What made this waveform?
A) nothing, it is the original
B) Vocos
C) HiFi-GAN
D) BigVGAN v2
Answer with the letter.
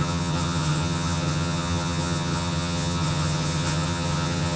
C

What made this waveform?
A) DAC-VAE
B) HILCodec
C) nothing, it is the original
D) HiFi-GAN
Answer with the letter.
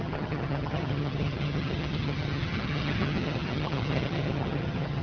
D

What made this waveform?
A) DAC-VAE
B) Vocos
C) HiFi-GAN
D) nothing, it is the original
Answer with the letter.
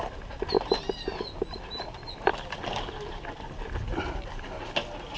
D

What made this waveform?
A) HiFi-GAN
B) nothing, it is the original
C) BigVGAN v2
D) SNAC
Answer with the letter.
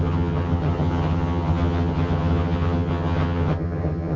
A